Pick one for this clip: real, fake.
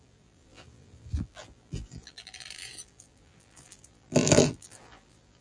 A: fake